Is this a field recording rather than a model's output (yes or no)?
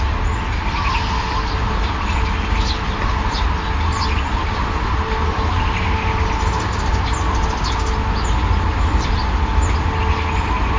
yes